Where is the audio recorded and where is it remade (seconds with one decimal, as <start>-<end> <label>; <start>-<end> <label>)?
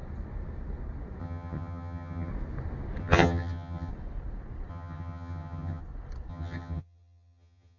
0.0-1.2 recorded; 1.2-2.3 remade; 2.3-3.0 recorded; 3.0-3.9 remade; 3.9-4.7 recorded; 4.7-5.8 remade; 5.8-6.3 recorded; 6.3-7.8 remade